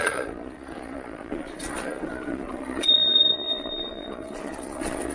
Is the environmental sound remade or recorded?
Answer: remade